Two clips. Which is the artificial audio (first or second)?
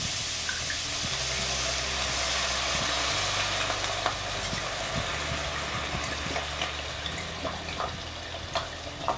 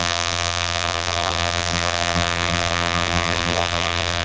second